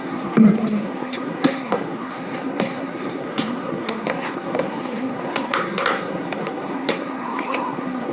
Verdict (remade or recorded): remade